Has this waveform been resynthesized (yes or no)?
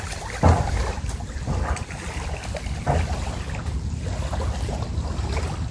no